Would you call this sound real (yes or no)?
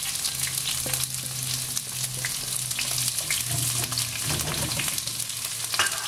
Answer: yes